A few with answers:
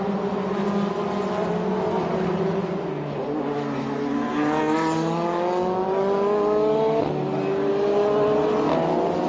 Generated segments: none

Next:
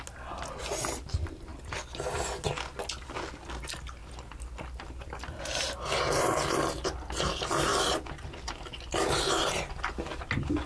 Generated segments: none

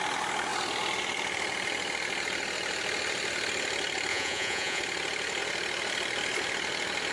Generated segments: 4.1-4.8

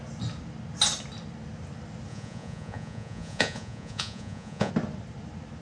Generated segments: 2.1-4.7